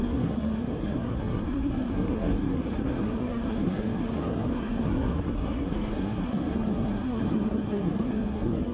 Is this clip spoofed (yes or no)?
yes